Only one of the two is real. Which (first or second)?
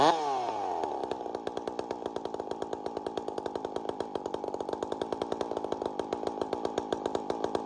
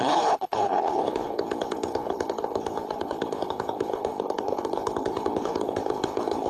first